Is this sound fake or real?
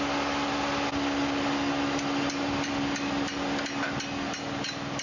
real